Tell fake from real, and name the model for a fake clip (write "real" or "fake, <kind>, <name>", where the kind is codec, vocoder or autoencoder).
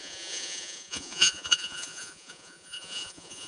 fake, vocoder, Vocos